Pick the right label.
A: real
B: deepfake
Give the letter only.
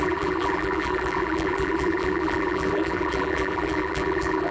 B